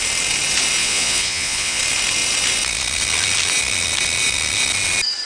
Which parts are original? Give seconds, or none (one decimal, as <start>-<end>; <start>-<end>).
0.0-0.8; 1.8-5.3